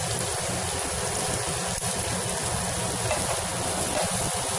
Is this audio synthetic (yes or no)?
no